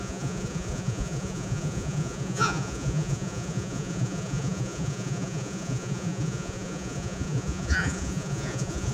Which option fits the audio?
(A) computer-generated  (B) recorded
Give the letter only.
A